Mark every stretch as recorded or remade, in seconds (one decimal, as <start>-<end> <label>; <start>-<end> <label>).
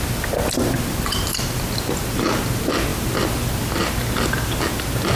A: 0.0-5.2 recorded